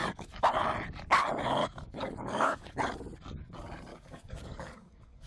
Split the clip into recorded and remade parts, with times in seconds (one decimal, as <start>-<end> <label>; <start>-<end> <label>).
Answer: 0.0-0.5 remade; 0.5-1.6 recorded; 1.6-2.8 remade; 2.8-3.9 recorded; 3.9-5.3 remade